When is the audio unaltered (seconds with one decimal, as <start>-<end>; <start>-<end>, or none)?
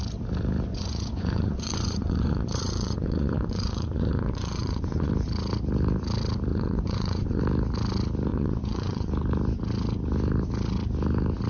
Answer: 0.0-0.7; 5.1-6.5; 7.4-8.3; 9.1-11.5